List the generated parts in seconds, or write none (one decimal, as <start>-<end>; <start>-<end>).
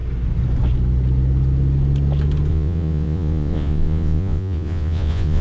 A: 2.5-5.4